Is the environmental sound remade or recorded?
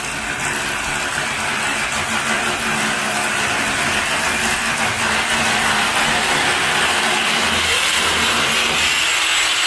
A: recorded